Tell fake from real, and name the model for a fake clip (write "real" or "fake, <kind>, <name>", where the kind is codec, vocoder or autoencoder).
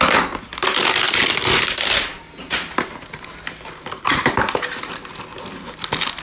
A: real